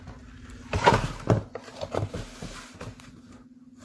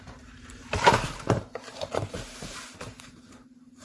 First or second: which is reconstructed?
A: second